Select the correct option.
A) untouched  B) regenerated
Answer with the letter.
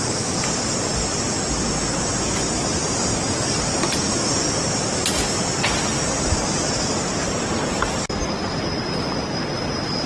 A